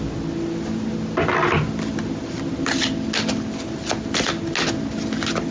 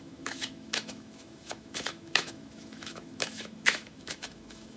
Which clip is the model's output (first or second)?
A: second